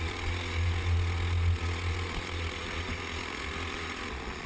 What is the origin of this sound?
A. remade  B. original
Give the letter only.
A